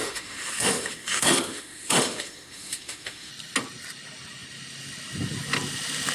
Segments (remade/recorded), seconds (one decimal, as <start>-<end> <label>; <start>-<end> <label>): 0.0-3.3 remade; 3.3-6.1 recorded